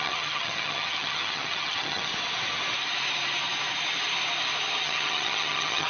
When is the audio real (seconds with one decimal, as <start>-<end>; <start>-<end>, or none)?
2.1-4.8